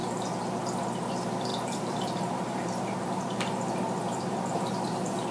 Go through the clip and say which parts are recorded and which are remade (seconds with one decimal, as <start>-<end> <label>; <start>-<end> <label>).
0.0-1.5 recorded; 1.5-4.7 remade; 4.7-5.3 recorded